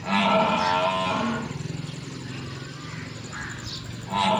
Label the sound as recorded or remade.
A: remade